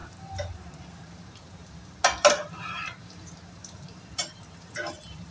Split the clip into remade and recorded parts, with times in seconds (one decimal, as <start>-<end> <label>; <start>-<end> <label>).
0.0-1.8 remade; 1.8-3.0 recorded; 3.0-5.3 remade